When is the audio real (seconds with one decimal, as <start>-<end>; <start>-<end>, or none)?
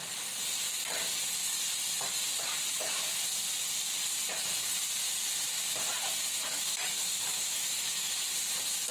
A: 0.0-6.7; 8.1-8.9